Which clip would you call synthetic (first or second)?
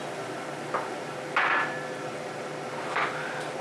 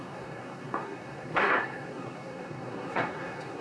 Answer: second